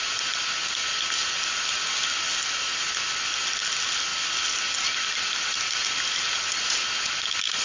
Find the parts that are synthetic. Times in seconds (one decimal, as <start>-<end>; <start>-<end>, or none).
none